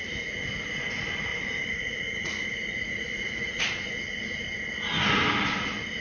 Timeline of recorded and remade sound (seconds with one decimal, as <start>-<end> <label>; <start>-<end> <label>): 0.0-1.3 recorded; 1.3-3.6 remade; 3.6-6.0 recorded